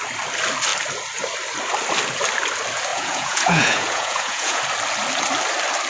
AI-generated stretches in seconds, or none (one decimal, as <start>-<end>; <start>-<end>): 2.9-4.6